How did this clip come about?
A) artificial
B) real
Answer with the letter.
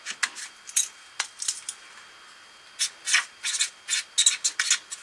B